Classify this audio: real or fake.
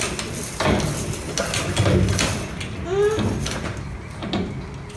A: real